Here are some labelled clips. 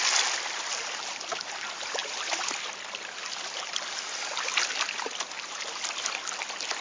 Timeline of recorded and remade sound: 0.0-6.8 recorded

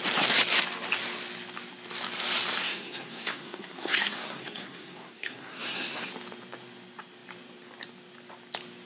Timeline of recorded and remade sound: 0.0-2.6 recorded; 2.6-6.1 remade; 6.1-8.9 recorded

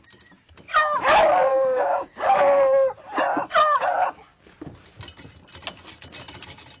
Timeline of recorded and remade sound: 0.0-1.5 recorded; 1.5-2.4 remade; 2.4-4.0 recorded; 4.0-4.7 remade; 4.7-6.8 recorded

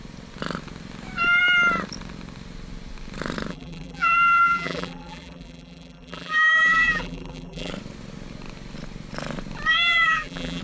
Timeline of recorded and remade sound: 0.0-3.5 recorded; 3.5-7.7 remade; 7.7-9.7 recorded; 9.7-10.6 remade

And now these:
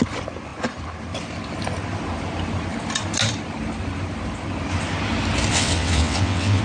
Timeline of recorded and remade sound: 0.0-5.5 recorded; 5.5-6.6 remade

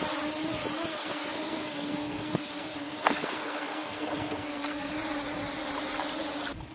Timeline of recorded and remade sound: 0.0-0.9 recorded; 0.9-4.9 remade; 4.9-6.7 recorded

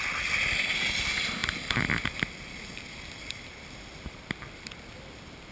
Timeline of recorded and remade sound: 0.0-5.5 recorded